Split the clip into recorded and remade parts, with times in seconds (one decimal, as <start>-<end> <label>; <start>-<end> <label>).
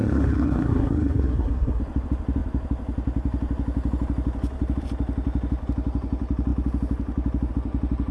0.0-1.8 remade; 1.8-8.1 recorded